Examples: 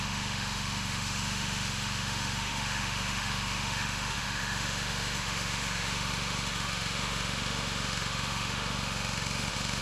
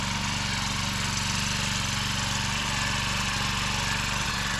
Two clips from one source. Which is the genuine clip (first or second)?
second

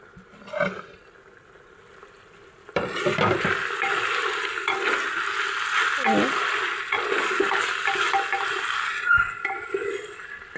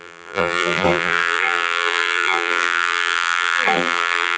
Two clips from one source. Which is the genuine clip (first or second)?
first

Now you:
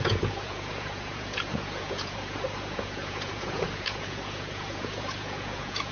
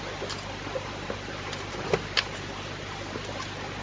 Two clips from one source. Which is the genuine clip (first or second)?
second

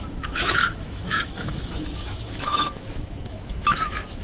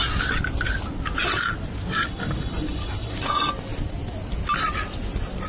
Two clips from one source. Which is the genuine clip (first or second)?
second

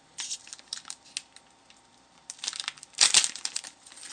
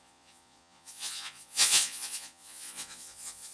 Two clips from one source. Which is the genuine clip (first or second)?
first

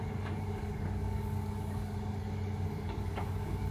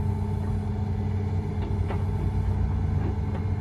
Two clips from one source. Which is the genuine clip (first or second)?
second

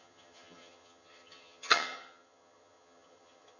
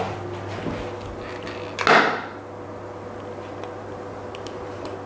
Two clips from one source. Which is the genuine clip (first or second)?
second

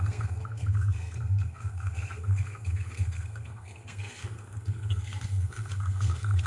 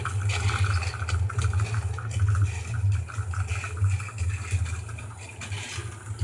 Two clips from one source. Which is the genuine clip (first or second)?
second